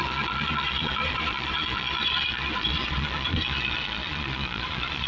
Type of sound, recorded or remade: remade